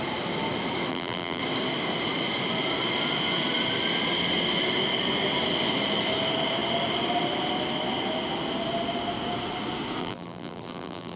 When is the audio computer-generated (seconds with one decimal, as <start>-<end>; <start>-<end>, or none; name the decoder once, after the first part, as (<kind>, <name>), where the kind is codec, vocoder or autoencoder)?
0.9-1.4 (vocoder, BigVGAN v2); 10.0-11.2